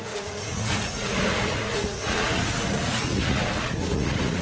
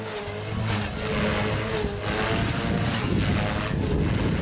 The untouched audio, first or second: second